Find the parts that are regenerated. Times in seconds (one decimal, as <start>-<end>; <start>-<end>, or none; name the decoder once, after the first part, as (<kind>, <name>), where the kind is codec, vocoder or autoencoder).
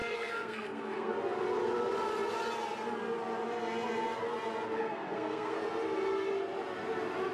0.0-1.1 (codec, SNAC); 4.8-5.6